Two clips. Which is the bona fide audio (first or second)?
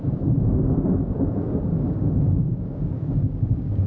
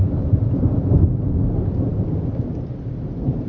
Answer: second